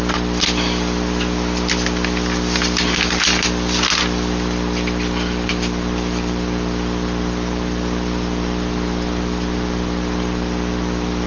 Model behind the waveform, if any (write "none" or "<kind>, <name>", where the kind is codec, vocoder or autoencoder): none